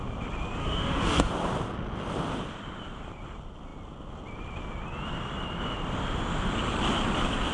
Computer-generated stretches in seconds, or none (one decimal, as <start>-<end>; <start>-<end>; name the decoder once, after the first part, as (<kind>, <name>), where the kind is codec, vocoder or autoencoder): 0.6-1.3 (autoencoder, DAC-VAE)